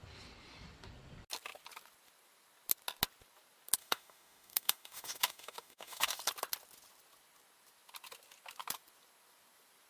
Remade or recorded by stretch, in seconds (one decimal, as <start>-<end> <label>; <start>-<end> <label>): 0.0-3.8 recorded; 3.8-6.2 remade; 6.2-9.9 recorded